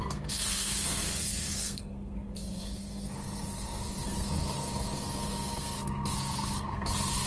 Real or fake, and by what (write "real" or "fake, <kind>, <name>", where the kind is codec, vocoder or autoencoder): fake, codec, SNAC